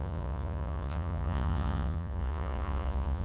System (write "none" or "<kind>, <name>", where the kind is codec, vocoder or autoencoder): vocoder, Vocos